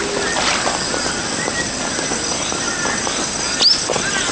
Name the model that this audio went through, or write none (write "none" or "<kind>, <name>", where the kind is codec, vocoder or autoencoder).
none